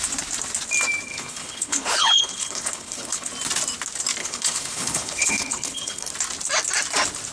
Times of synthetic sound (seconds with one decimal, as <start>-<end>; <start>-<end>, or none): 1.1-3.3; 4.2-6.1